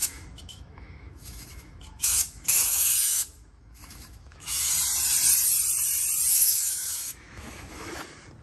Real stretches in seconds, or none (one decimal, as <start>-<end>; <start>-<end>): 4.7-6.3; 7.9-8.4